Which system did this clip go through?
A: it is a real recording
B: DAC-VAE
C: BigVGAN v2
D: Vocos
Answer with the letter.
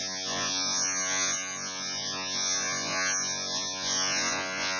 D